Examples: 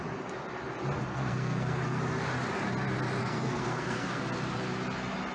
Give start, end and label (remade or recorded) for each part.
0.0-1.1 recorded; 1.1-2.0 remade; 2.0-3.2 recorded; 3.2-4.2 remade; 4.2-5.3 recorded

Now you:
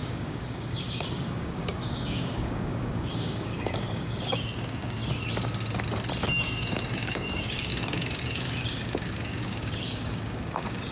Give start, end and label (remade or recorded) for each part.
0.0-5.0 remade; 5.0-6.2 recorded; 6.2-10.9 remade

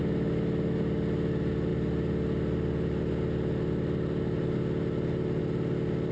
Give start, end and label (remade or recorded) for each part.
0.0-6.1 recorded

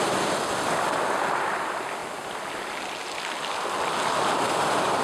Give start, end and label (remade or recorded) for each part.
0.0-5.0 recorded

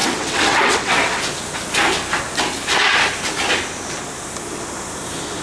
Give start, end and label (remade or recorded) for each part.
0.0-1.2 remade; 1.2-5.4 recorded

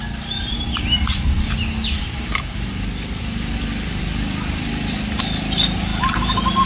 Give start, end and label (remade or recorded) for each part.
0.0-6.7 remade

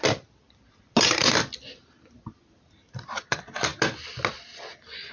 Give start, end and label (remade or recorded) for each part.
0.0-5.1 recorded